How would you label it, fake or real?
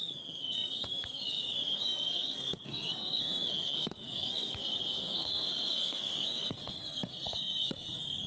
fake